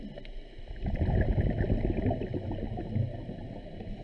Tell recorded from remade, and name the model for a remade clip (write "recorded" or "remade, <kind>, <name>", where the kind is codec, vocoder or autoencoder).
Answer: recorded